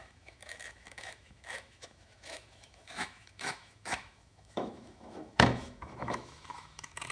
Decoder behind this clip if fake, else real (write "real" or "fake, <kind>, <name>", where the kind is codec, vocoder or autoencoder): fake, autoencoder, DAC-VAE